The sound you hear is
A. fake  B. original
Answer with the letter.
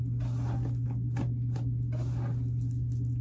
B